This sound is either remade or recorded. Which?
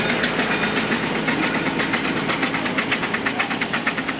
recorded